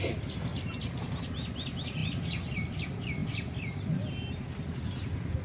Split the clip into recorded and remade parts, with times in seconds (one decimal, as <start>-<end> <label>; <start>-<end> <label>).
0.0-5.4 recorded